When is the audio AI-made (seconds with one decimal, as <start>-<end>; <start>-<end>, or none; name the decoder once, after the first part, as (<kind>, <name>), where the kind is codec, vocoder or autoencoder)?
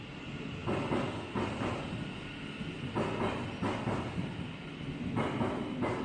none